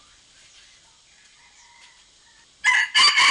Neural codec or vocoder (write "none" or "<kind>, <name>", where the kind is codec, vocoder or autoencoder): none